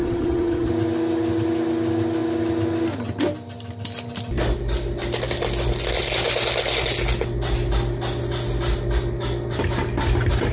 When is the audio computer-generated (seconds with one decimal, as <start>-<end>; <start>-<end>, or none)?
0.0-0.7